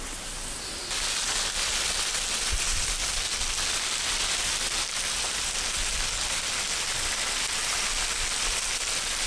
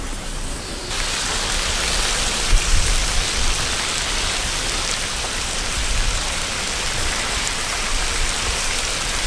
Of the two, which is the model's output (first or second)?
second